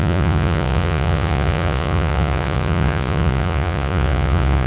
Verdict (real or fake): fake